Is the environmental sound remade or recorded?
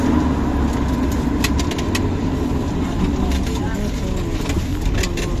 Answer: recorded